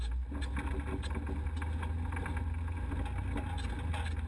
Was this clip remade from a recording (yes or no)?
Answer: no